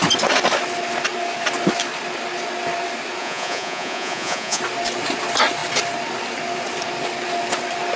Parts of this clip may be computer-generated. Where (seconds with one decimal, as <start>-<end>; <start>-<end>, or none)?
3.2-4.6